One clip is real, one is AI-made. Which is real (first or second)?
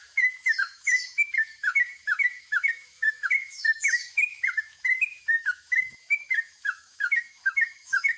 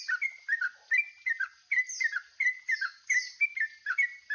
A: second